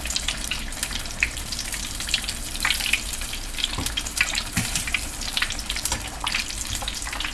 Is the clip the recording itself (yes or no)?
no